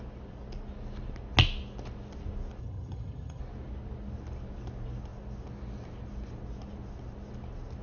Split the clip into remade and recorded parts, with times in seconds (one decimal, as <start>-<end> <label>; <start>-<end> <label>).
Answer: 0.0-2.6 recorded; 2.6-3.4 remade; 3.4-7.8 recorded